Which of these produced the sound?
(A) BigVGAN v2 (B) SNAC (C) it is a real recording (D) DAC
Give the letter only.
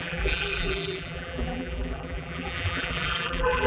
A